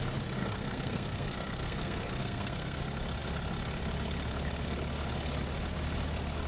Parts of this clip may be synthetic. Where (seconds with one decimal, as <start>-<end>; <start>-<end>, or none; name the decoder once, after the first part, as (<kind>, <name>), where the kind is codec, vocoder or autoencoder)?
0.4-2.8 (codec, SNAC)